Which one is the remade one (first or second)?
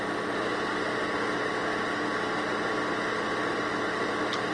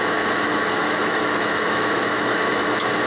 second